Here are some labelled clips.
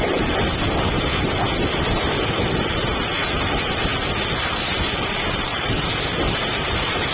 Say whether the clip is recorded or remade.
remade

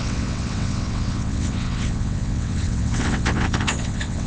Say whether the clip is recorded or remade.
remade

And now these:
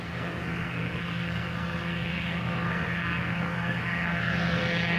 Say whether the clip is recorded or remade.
remade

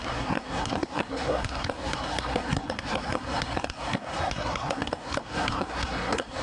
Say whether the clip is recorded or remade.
remade